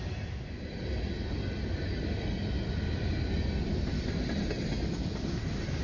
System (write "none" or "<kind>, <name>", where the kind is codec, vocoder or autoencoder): none